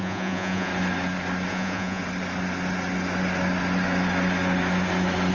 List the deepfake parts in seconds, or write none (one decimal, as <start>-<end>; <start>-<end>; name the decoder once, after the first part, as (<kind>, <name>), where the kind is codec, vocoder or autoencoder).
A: 0.0-0.7 (vocoder, Vocos); 1.5-2.0

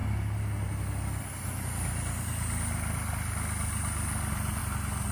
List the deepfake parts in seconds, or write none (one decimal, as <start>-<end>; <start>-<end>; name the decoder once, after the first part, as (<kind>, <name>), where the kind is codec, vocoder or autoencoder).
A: none

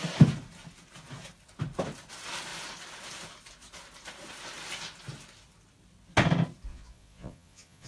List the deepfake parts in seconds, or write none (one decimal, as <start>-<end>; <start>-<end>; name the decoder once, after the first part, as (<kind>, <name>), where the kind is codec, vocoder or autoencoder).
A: 6.7-7.9 (vocoder, Vocos)

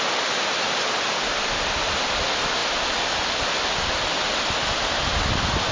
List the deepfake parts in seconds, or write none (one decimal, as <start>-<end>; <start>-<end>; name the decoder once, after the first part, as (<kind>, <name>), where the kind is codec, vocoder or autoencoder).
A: none

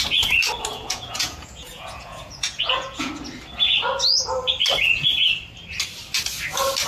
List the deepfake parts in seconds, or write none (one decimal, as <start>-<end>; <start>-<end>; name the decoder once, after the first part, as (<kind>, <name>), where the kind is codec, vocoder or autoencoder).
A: 0.7-3.1 (vocoder, Vocos)

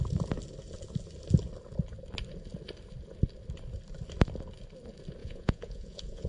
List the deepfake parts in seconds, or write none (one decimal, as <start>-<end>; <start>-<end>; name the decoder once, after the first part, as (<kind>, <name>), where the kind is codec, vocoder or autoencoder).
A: 5.2-6.3 (vocoder, Vocos)